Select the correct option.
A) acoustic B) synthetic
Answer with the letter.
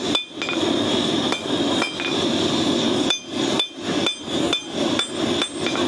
A